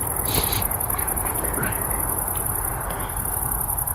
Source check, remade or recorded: recorded